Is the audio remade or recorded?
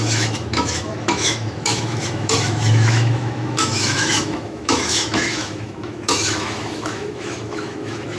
remade